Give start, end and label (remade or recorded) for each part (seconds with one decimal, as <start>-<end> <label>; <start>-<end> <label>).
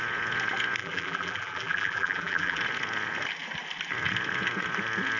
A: 0.0-0.8 recorded; 0.8-2.6 remade; 2.6-5.2 recorded